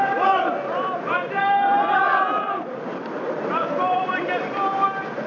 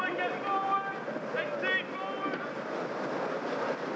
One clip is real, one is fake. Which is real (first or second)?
second